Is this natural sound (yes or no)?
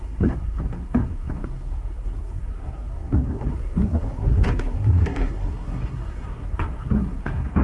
no